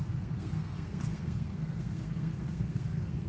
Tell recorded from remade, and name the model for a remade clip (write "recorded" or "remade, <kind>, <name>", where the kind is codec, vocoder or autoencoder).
remade, codec, SNAC